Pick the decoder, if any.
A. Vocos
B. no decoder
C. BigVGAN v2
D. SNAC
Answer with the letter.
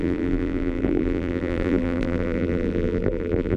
C